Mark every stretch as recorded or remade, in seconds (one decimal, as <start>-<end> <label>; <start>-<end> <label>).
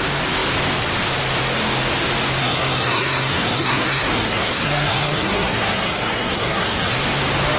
0.0-2.4 recorded; 2.4-7.0 remade; 7.0-7.6 recorded